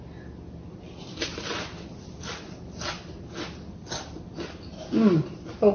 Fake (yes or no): no